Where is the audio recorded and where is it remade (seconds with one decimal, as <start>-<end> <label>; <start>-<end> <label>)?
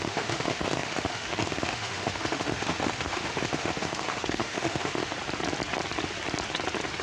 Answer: 0.0-5.1 remade; 5.1-7.0 recorded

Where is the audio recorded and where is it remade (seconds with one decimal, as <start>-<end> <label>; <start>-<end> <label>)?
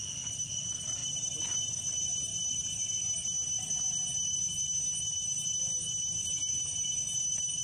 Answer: 0.0-1.0 recorded; 1.0-1.6 remade; 1.6-7.6 recorded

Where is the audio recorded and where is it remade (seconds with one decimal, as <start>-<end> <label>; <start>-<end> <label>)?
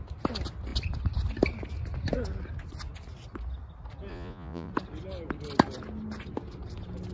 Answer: 0.0-4.1 recorded; 4.1-4.7 remade; 4.7-7.1 recorded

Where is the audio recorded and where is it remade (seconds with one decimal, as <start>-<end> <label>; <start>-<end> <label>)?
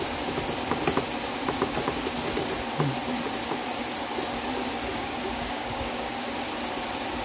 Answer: 0.0-4.9 recorded; 4.9-6.4 remade; 6.4-7.2 recorded